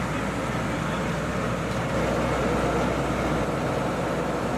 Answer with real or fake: real